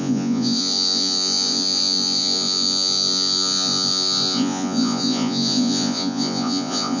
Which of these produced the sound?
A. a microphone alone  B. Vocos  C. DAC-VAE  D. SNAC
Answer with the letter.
B